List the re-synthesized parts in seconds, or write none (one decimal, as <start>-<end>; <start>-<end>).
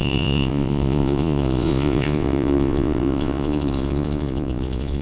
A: 0.0-5.0